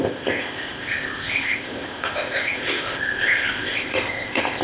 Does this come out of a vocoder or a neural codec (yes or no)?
yes